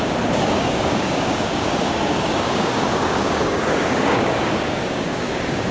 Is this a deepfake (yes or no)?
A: yes